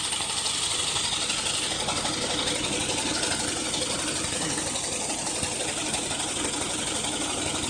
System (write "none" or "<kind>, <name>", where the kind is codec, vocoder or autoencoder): none